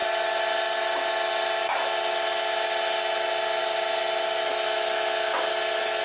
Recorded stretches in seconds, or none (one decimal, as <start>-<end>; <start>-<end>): 0.0-6.0